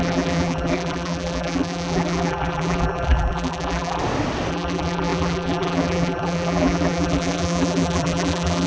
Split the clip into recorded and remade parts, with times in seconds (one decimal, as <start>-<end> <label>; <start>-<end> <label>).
0.0-4.0 remade; 4.0-4.5 recorded; 4.5-8.7 remade